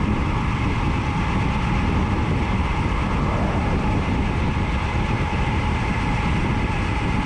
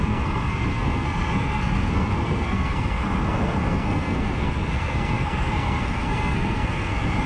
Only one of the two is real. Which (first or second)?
first